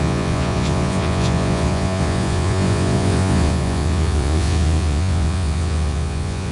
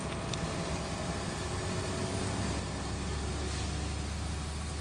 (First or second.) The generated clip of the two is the first